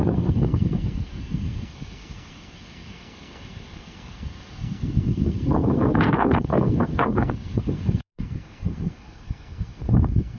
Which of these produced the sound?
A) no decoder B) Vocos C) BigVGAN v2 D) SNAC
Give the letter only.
D